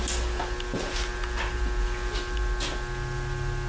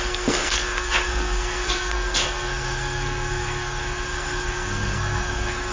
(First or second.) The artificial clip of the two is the second